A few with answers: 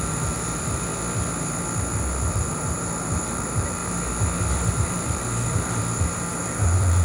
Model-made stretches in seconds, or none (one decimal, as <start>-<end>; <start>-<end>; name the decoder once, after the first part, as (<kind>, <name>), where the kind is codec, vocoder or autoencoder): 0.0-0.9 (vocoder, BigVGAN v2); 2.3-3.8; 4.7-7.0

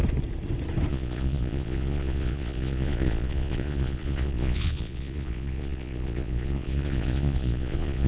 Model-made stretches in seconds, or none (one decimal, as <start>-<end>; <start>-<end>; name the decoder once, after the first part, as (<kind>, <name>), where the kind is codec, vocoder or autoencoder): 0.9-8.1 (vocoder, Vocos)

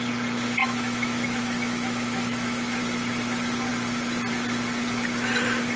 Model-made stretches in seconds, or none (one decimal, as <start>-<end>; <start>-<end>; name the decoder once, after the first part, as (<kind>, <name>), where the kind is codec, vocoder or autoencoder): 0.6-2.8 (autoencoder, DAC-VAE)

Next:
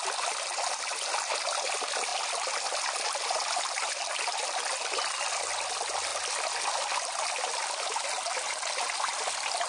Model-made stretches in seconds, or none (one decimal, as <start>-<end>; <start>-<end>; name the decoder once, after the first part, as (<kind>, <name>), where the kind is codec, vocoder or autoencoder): none